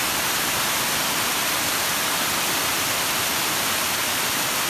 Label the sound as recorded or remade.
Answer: remade